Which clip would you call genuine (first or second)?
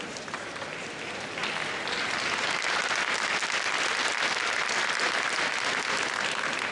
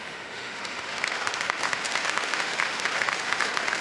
first